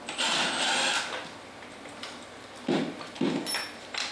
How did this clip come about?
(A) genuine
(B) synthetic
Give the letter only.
B